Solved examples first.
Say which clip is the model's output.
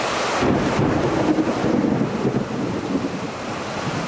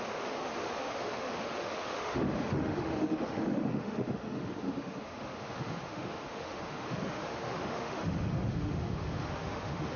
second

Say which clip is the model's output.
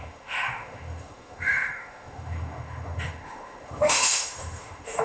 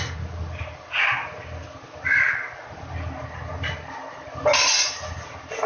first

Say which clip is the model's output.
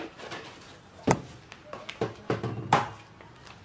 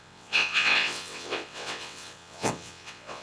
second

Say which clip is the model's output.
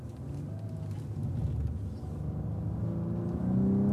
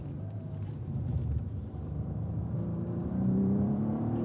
second